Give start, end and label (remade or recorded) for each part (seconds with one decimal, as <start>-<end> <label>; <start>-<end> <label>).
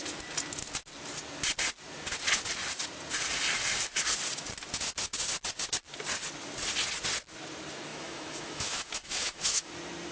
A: 0.0-7.9 recorded; 7.9-9.7 remade; 9.7-10.1 recorded